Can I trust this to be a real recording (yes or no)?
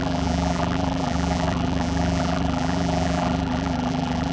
no